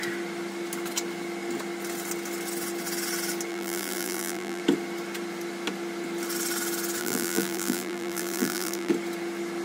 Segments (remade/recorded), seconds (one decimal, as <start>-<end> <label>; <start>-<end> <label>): 0.0-3.5 recorded; 3.5-4.6 remade; 4.6-7.0 recorded; 7.0-8.9 remade; 8.9-9.6 recorded